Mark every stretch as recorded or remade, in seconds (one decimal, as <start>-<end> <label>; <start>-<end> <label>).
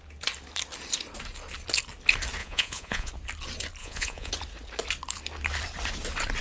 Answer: 0.0-2.4 recorded; 2.4-3.1 remade; 3.1-3.8 recorded; 3.8-4.3 remade; 4.3-6.4 recorded